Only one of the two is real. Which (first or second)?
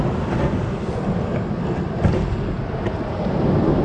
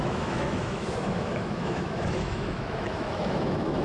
first